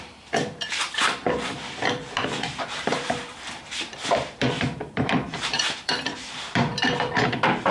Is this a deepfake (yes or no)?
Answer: yes